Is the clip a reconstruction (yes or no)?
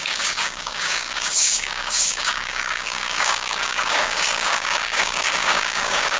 yes